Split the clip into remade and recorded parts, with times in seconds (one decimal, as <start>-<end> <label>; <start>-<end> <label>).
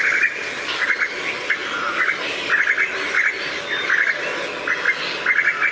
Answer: 0.0-5.7 recorded